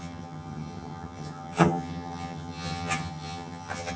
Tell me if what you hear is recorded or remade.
remade